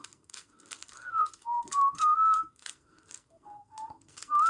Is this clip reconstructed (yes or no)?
yes